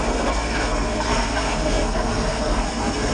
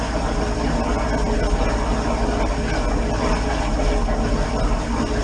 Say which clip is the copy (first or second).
first